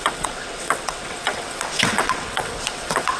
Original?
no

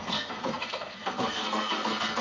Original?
no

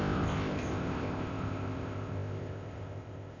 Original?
no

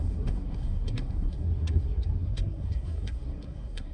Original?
no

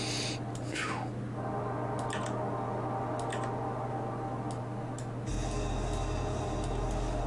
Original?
yes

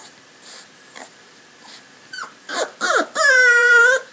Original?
no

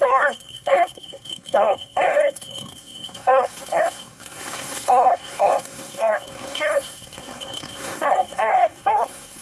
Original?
no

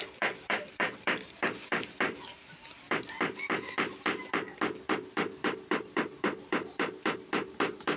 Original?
no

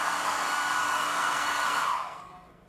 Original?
no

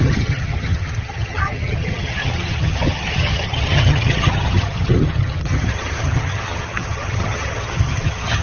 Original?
no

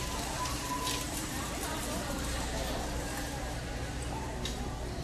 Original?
no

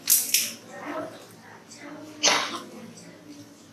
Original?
yes